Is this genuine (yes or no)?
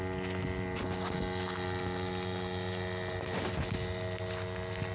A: yes